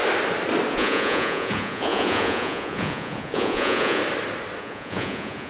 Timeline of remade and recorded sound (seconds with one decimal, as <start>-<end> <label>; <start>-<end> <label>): 0.0-0.7 recorded; 0.7-4.0 remade; 4.0-4.6 recorded; 4.6-5.5 remade